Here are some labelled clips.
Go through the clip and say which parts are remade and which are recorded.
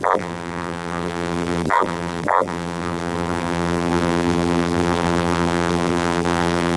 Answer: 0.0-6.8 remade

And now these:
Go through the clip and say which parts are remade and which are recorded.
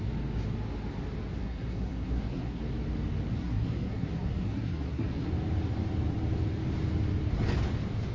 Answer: 0.0-1.4 recorded; 1.4-2.6 remade; 2.6-3.3 recorded; 3.3-5.3 remade; 5.3-8.1 recorded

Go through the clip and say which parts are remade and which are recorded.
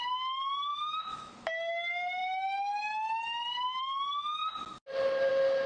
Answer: 0.0-0.7 recorded; 0.7-1.3 remade; 1.3-5.7 recorded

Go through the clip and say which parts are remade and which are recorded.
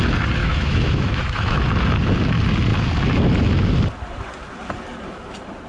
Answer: 0.0-0.4 recorded; 0.4-1.6 remade; 1.6-5.7 recorded